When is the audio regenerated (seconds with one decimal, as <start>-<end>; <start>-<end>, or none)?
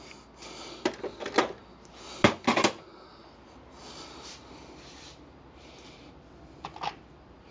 none